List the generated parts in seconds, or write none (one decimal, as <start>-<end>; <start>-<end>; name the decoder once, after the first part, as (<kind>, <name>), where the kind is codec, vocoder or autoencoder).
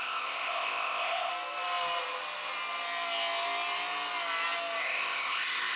0.0-1.3 (codec, ZipCodec); 4.8-5.8